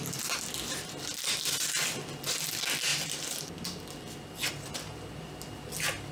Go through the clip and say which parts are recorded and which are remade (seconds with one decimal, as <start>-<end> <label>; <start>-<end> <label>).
0.0-6.1 recorded